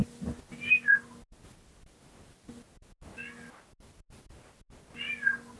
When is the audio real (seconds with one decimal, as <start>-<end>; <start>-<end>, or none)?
0.0-5.6